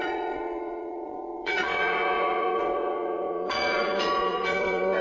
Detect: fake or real fake